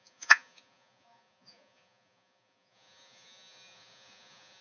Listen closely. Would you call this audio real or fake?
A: fake